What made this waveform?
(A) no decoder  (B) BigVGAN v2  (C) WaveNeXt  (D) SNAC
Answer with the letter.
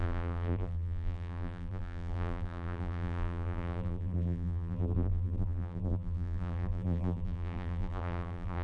B